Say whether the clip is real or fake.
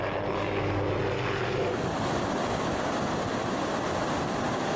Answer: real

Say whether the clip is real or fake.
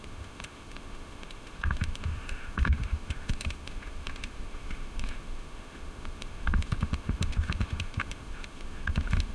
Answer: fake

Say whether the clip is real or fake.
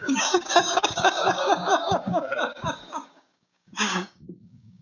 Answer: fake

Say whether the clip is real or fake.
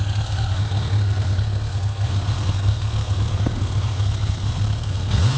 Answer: fake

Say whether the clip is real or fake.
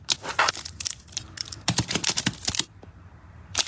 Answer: fake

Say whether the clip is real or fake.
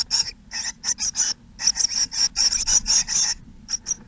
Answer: real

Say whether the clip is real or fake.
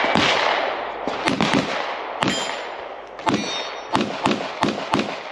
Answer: real